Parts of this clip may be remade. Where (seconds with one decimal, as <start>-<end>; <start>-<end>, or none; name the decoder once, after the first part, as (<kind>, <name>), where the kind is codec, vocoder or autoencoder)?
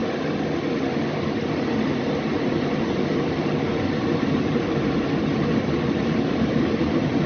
2.3-7.3 (vocoder, BigVGAN v2)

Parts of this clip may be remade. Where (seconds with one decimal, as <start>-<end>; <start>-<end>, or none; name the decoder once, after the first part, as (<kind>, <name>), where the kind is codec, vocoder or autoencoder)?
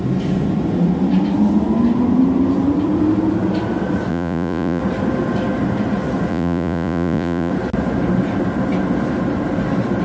4.1-4.8 (vocoder, Vocos); 6.3-7.5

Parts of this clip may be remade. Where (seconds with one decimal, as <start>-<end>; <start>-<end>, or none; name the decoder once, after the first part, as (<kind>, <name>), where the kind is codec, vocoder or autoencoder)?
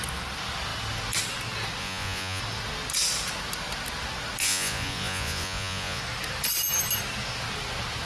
1.8-2.4 (vocoder, Vocos); 4.4-6.0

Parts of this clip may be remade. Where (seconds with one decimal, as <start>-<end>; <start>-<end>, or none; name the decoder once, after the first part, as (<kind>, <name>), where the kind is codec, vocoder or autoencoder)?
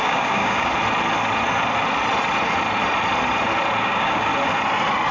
0.0-0.7 (codec, DAC); 3.8-4.3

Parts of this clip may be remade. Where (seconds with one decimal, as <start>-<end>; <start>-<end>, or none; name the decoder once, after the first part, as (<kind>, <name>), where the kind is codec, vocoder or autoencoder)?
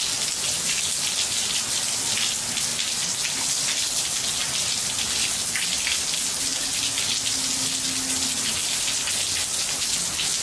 none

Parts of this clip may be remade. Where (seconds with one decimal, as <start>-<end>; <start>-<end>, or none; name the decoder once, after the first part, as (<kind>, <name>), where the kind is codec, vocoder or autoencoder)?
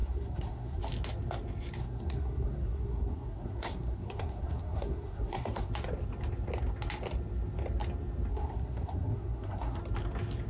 0.0-0.8 (codec, SNAC); 1.8-5.7; 8.3-9.8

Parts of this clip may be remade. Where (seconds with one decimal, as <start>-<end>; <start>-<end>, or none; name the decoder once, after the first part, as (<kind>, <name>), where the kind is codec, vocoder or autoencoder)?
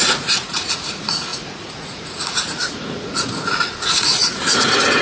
0.0-5.0 (vocoder, Vocos)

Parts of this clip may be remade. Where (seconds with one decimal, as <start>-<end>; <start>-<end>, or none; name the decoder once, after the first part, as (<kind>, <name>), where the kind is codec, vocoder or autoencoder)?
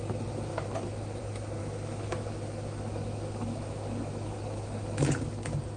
0.5-1.2 (autoencoder, DAC-VAE); 1.6-5.1